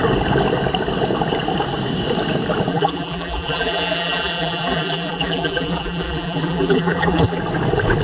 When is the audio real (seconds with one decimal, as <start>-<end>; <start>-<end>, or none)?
0.0-2.7; 7.4-8.0